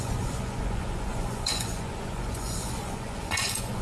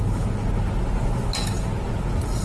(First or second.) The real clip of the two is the second